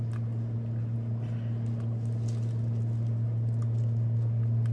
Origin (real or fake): real